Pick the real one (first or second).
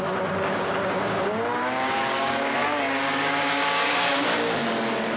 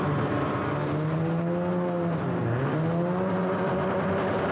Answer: second